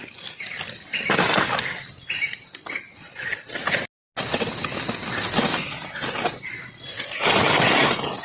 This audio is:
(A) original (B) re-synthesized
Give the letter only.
A